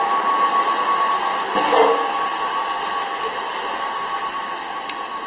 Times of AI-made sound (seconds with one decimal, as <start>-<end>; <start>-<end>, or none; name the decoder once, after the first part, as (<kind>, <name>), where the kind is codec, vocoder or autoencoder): none